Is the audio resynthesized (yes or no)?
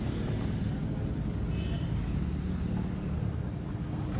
no